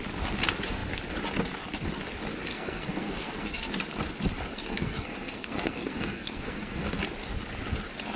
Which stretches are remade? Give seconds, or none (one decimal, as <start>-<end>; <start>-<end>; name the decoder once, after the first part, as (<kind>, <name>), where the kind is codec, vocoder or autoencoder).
2.5-3.7 (codec, SNAC); 4.5-7.0